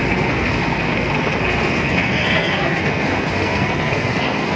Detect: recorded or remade remade